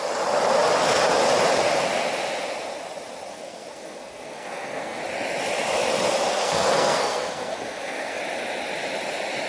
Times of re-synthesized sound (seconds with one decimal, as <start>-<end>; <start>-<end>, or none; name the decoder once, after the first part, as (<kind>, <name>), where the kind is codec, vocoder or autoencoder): 3.3-5.0 (codec, SNAC); 6.3-8.2